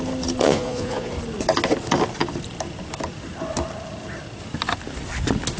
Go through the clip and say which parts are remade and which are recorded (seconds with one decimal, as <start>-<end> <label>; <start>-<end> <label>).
0.0-0.4 recorded; 0.4-1.1 remade; 1.1-5.6 recorded